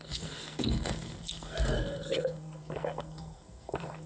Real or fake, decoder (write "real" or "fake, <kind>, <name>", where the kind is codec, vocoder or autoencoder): fake, codec, SNAC